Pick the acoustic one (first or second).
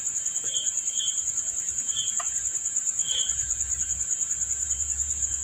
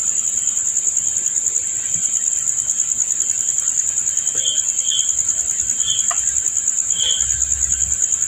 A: second